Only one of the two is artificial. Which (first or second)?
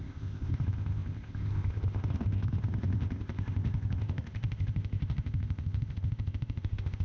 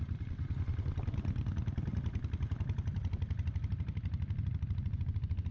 first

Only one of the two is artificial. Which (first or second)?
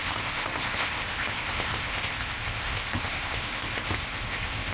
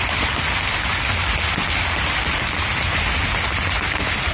first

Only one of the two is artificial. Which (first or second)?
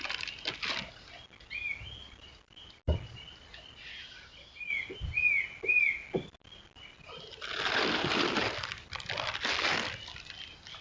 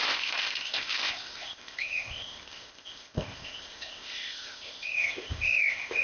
second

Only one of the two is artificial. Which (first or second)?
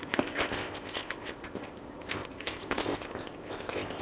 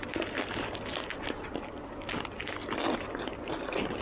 first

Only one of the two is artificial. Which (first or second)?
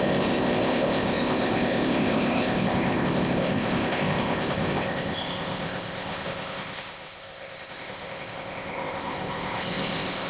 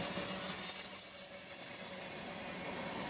first